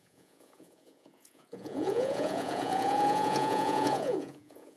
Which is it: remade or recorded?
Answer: remade